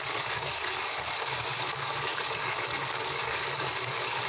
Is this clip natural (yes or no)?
no